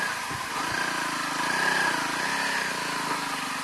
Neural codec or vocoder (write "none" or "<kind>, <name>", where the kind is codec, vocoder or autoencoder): none